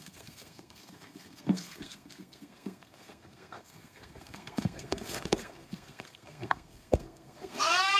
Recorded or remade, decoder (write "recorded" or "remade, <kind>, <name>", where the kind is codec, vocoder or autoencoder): remade, codec, SNAC